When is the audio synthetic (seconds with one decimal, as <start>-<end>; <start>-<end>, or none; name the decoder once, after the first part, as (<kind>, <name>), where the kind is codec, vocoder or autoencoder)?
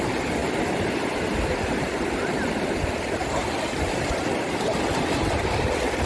none